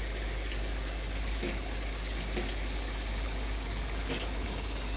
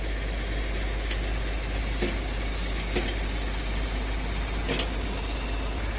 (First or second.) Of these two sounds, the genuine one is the second